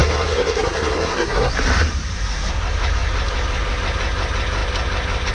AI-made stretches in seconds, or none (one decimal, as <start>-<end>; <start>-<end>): 0.0-1.5